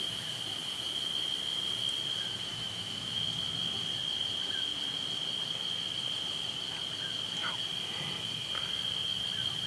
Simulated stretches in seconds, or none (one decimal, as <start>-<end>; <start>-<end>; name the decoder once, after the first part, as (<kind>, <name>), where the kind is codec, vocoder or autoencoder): 2.5-3.2 (autoencoder, DAC-VAE)